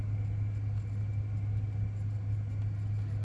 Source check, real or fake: real